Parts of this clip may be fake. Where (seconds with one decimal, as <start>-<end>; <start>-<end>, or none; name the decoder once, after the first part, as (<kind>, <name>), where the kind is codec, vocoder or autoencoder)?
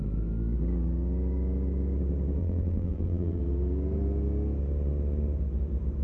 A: 2.4-3.4 (vocoder, BigVGAN v2)